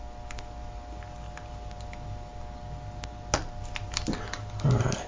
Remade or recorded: recorded